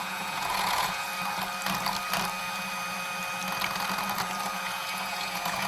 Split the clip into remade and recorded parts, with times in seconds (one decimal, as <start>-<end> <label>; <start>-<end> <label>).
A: 0.0-1.1 remade; 1.1-4.5 recorded; 4.5-5.7 remade